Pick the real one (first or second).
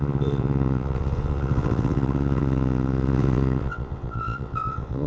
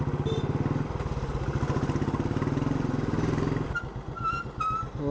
second